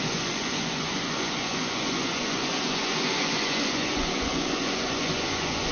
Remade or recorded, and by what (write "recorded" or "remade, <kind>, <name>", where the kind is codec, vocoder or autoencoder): remade, vocoder, Vocos